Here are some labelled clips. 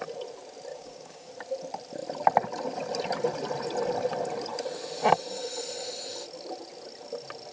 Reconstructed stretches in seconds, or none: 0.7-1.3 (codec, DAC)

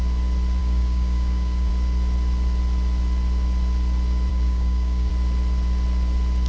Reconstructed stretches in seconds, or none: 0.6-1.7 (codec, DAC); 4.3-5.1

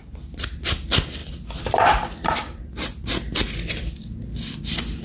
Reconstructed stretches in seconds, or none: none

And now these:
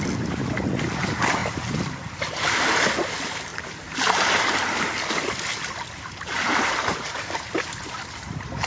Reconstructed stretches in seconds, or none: none

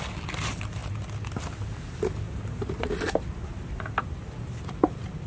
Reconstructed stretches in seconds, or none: none

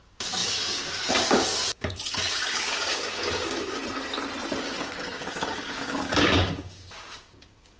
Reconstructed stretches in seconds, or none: 0.0-3.8 (codec, DAC); 4.6-7.8